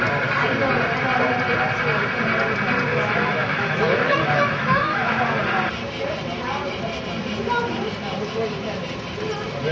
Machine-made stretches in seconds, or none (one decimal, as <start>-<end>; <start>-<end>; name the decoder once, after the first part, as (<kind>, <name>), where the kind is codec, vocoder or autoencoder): 2.9-5.2 (autoencoder, DAC-VAE)